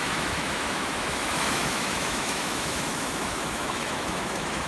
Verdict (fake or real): fake